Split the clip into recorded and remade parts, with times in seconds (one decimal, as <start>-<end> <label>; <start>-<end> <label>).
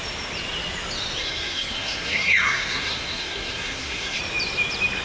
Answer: 0.0-1.2 recorded; 1.2-4.2 remade; 4.2-5.0 recorded